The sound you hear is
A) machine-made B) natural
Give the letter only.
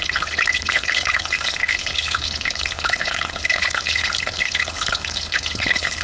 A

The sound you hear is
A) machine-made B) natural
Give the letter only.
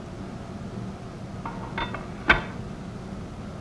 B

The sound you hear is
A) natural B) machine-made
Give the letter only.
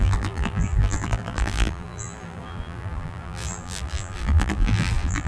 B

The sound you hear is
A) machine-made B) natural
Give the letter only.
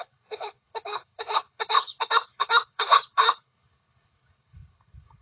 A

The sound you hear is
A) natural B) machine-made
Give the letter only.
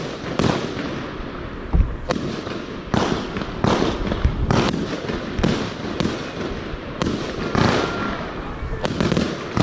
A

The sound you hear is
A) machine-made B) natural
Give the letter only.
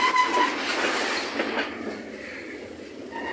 B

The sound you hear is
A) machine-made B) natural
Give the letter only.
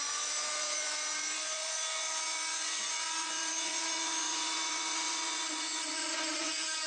A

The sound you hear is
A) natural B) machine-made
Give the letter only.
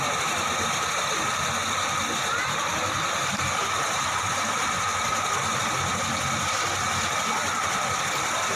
A